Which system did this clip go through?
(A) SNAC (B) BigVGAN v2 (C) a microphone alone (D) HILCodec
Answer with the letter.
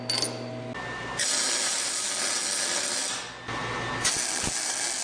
C